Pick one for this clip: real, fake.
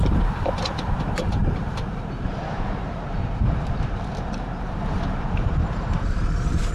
fake